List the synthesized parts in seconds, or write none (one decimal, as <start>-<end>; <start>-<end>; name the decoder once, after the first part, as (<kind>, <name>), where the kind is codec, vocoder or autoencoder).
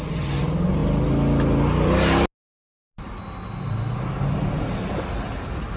none